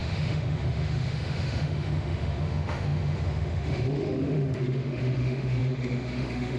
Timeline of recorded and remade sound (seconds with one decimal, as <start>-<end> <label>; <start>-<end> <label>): 0.0-6.6 remade